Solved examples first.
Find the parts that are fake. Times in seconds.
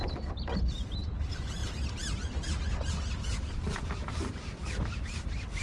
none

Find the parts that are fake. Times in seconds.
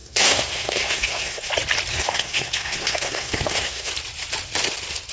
0.0-1.5 (codec, SNAC); 1.9-3.9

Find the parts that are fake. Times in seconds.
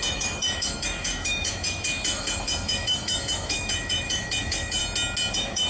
0.0-4.8 (autoencoder, DAC-VAE); 5.3-5.7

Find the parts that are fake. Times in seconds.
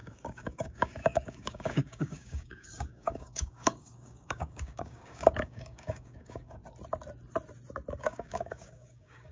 0.0-6.6 (codec, DAC); 8.0-9.3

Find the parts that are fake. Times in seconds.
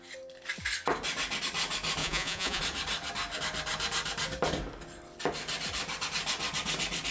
2.0-2.6 (vocoder, Vocos)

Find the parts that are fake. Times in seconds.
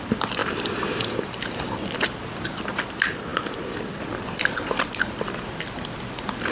none